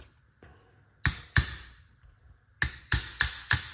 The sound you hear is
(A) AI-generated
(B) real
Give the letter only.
B